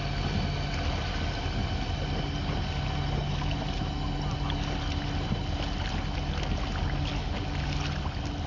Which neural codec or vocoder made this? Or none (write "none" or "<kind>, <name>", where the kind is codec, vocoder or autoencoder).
none